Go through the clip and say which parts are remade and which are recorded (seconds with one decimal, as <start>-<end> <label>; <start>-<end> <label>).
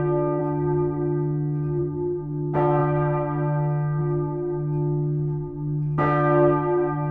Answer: 0.0-7.1 recorded